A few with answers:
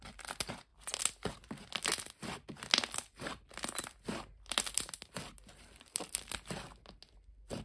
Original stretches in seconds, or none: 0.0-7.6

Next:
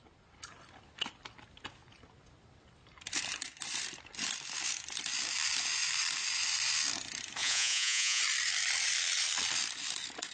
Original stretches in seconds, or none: 0.0-7.4; 8.2-10.3

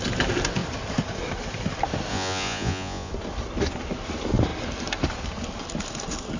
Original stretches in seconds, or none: 0.0-2.1; 3.1-6.4

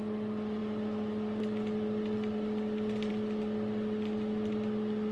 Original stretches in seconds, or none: 0.0-5.1

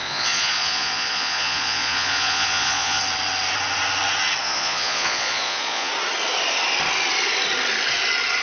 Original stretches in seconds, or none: 3.0-4.4; 5.9-8.4

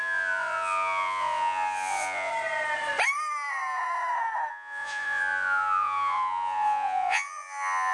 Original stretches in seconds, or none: 2.3-4.5

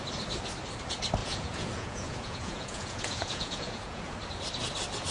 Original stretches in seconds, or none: 0.0-1.2; 4.0-5.1

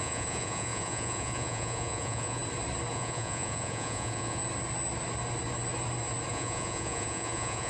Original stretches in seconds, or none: 2.4-2.9; 4.4-6.3